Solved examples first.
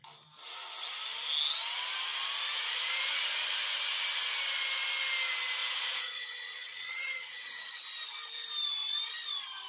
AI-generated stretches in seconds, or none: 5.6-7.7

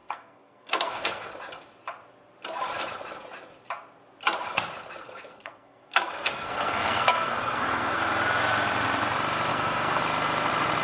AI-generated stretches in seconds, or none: 0.0-1.3; 5.0-8.0; 9.5-10.0

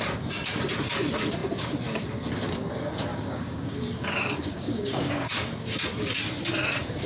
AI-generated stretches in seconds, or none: 3.1-5.3

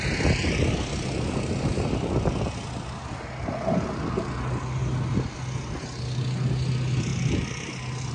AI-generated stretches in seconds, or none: none

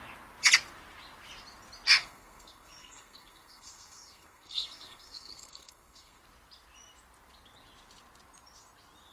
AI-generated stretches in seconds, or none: 2.0-6.2